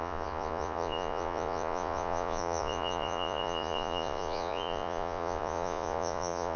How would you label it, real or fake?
fake